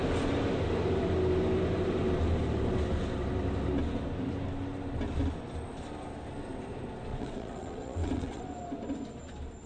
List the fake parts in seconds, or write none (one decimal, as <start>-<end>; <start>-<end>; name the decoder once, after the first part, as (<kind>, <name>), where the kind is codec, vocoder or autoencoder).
7.1-8.4 (vocoder, WaveNeXt)